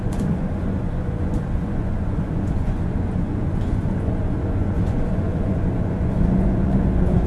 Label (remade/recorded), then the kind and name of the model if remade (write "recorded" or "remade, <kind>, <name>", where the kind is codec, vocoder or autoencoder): remade, vocoder, Vocos